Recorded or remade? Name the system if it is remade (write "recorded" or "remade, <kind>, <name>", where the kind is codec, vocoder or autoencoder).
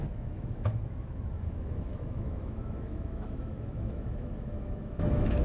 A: remade, autoencoder, DAC-VAE